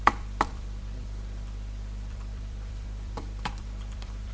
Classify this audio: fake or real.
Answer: fake